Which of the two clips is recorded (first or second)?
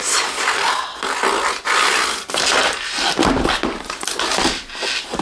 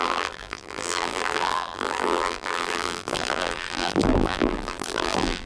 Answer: first